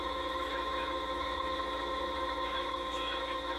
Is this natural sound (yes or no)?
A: no